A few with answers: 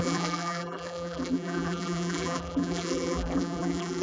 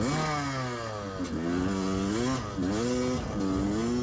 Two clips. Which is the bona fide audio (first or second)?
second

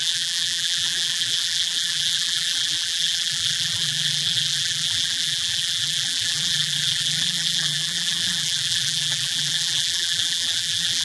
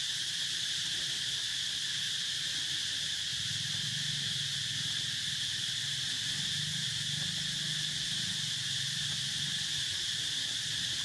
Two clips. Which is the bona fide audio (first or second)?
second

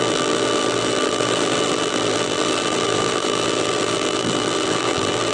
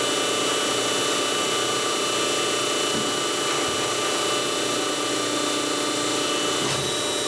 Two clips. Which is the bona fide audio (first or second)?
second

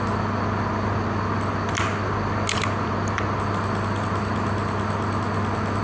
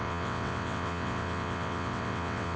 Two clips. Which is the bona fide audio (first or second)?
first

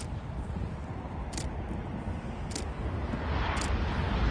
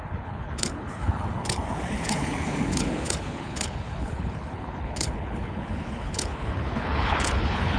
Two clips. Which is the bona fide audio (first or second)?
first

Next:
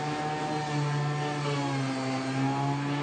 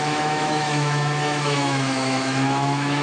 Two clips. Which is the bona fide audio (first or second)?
first